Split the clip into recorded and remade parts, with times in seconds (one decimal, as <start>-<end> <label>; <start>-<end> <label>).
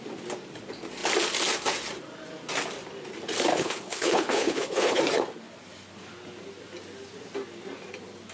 0.0-3.5 recorded; 3.5-5.0 remade; 5.0-8.3 recorded